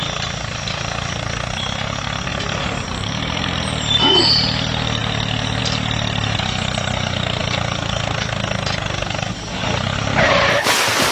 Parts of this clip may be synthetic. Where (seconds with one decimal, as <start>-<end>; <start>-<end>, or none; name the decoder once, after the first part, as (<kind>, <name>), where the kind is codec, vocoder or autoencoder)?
2.3-4.2 (vocoder, BigVGAN v2)